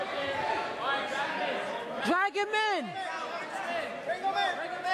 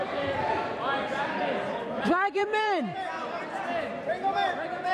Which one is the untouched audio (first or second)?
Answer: first